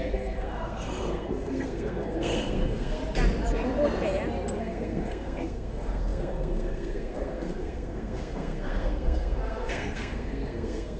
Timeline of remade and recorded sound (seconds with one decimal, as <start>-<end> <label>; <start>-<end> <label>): 0.0-3.0 remade; 3.0-4.6 recorded; 4.6-11.0 remade